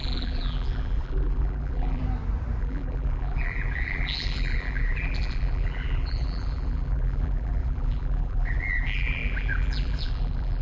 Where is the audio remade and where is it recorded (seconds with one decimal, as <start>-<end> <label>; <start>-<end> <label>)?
0.0-2.0 remade; 2.0-2.6 recorded; 2.6-10.6 remade